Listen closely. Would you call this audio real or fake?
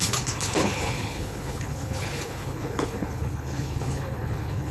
fake